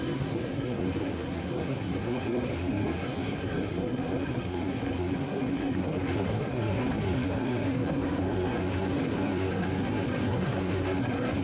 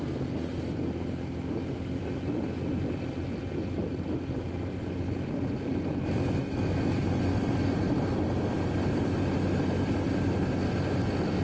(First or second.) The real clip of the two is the second